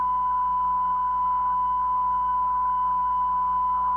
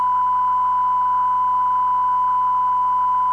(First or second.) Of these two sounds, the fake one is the first